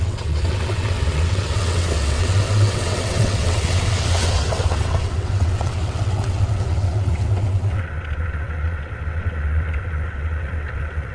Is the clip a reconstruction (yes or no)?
yes